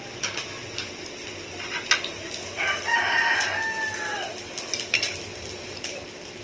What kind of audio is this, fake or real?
real